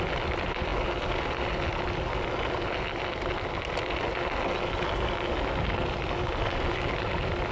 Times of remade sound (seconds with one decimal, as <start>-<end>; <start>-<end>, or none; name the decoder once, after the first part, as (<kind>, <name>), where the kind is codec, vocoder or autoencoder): none